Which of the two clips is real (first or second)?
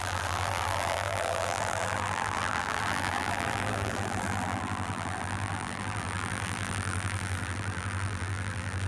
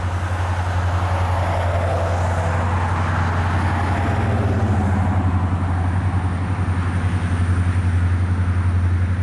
second